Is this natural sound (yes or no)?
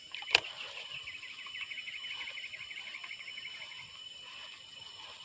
yes